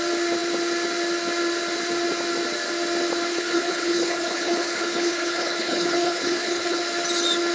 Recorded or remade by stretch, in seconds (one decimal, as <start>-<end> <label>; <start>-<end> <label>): 0.0-3.3 recorded; 3.3-6.8 remade; 6.8-7.5 recorded